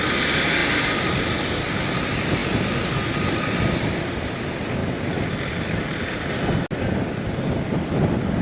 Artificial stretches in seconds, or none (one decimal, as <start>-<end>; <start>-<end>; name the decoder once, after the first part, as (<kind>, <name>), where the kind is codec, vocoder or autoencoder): none